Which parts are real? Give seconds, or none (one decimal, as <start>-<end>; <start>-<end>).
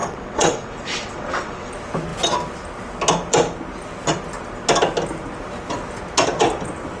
1.7-7.0